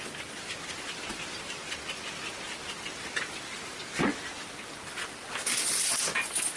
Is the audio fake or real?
real